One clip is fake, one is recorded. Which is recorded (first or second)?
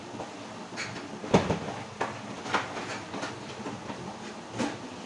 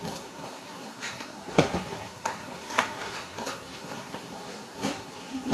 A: first